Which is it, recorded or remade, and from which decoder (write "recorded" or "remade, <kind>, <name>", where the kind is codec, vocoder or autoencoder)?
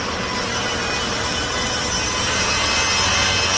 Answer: recorded